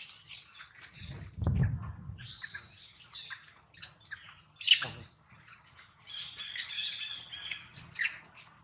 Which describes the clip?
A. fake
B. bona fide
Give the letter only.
B